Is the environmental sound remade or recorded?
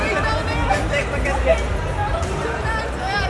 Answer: recorded